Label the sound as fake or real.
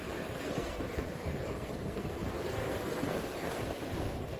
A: fake